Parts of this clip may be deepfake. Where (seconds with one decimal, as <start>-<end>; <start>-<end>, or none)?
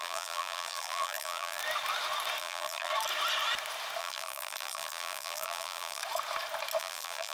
0.0-1.6; 2.4-2.9; 4.0-6.0; 6.8-7.3